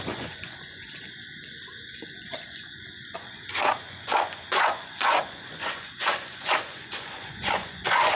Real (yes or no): no